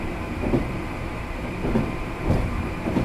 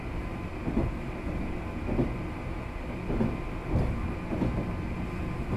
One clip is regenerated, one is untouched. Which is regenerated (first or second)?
first